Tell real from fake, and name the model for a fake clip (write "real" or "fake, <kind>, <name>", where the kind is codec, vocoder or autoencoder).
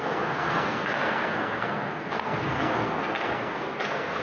fake, codec, SNAC